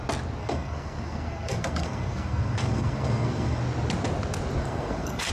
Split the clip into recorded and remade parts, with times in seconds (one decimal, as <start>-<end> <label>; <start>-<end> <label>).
0.0-0.4 recorded; 0.4-3.6 remade; 3.6-4.6 recorded; 4.6-5.3 remade